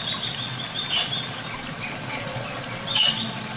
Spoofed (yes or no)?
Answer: no